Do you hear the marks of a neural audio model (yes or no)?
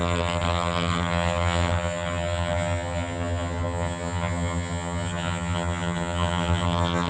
yes